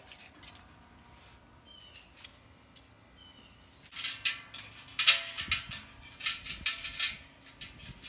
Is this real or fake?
real